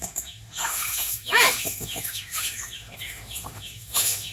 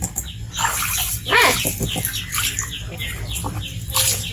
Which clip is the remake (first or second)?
first